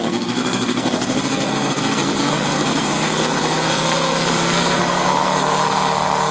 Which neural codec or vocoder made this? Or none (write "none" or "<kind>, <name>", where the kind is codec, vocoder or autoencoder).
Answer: codec, SNAC